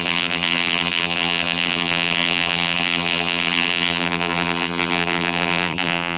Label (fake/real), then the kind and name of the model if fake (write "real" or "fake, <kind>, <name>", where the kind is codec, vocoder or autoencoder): fake, vocoder, BigVGAN v2